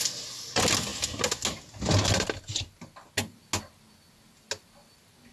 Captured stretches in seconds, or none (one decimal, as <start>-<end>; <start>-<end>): 0.0-5.3